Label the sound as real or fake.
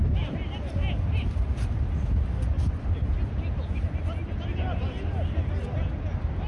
real